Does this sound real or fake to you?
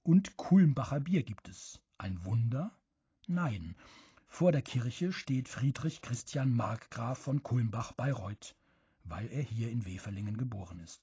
real